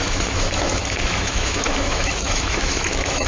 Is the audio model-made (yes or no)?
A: yes